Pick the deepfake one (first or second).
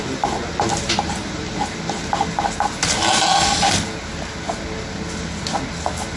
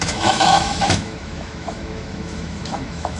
second